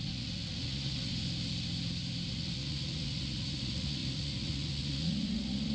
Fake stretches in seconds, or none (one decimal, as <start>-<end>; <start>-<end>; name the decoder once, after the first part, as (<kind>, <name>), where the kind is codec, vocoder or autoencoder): 0.0-1.1 (vocoder, Vocos); 2.3-5.7